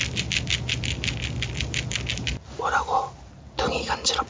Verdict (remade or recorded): recorded